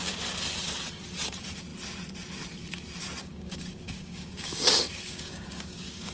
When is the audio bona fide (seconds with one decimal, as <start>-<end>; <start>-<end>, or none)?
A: 0.0-3.2